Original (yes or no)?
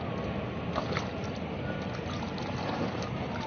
yes